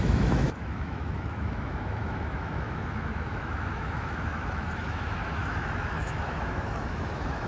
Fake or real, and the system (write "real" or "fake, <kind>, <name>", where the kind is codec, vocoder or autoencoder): fake, autoencoder, DAC-VAE